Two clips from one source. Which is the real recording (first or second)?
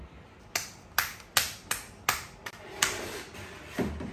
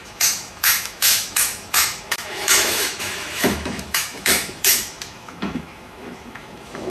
first